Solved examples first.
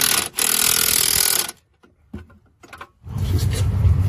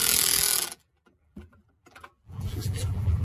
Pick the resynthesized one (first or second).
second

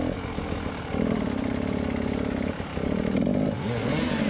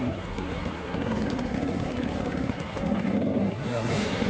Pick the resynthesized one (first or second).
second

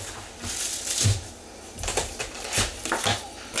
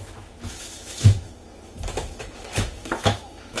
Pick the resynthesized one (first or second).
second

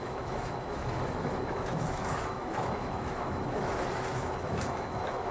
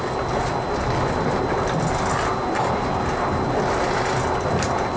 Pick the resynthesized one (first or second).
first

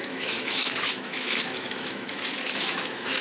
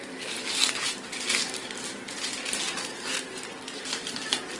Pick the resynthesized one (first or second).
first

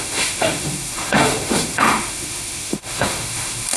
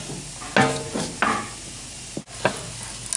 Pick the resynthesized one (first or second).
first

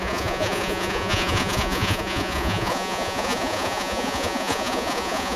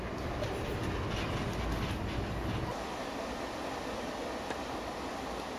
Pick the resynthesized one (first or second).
first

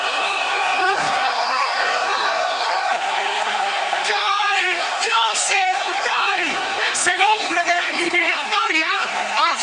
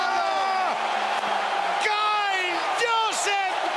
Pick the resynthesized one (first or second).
first